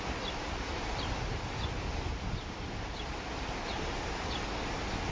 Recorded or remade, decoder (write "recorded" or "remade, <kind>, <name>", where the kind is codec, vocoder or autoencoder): recorded